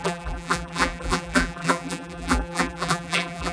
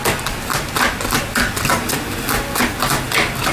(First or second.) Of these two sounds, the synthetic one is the first